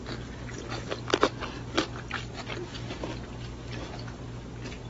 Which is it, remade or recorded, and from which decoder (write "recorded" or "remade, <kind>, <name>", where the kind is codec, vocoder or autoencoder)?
recorded